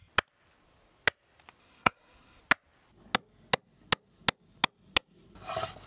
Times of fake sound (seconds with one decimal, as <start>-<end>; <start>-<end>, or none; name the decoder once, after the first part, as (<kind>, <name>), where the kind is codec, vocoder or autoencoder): 1.6-2.4 (codec, SNAC)